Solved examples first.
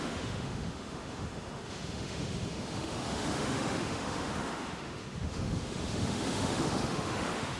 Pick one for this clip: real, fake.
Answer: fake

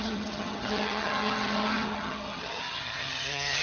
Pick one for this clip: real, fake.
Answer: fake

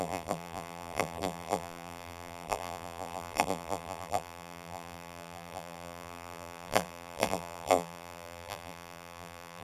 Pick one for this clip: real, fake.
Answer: fake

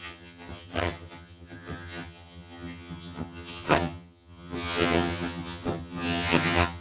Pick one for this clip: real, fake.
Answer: fake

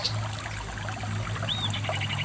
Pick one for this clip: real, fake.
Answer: real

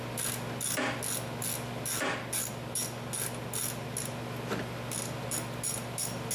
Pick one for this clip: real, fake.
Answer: real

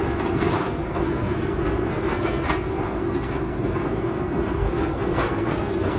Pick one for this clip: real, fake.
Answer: fake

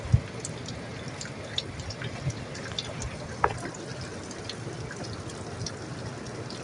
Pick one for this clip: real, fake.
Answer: real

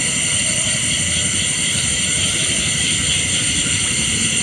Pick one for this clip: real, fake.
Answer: real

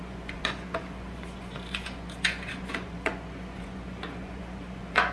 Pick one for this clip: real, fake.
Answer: fake